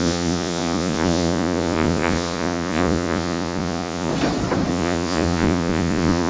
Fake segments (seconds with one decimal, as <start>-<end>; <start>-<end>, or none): 0.0-4.1; 4.7-6.3